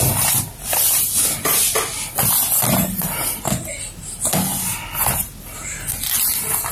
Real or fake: real